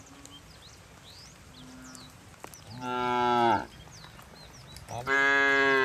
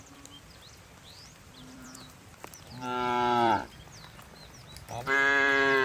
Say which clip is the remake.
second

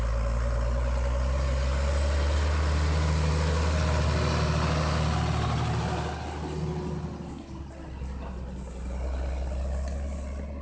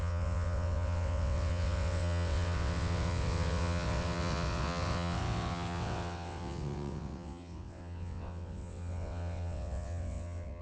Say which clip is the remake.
second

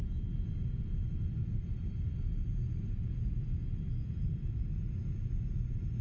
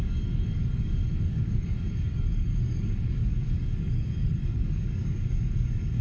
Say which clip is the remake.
second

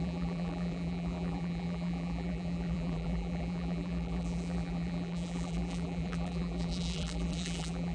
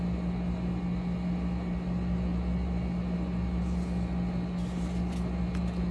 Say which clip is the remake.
first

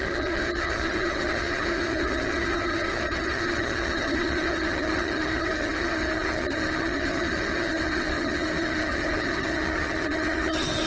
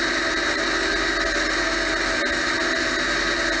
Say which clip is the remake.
first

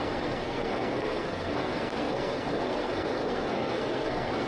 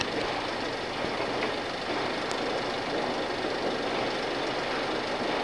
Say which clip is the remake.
first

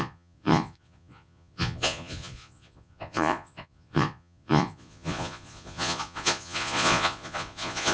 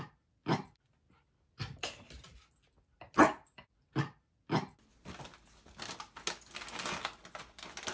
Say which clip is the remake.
first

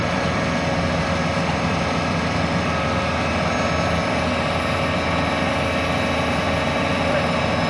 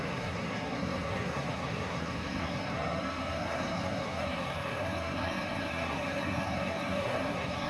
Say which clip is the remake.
second